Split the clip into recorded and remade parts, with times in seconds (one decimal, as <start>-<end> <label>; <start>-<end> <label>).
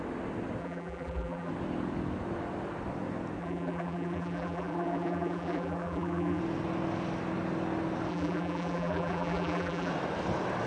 0.0-0.6 recorded; 0.6-1.5 remade; 1.5-3.4 recorded; 3.4-6.4 remade; 6.4-8.1 recorded; 8.1-9.9 remade; 9.9-10.7 recorded